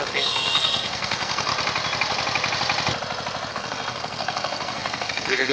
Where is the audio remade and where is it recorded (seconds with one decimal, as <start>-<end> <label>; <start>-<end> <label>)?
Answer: 0.0-1.5 remade; 1.5-3.5 recorded; 3.5-5.5 remade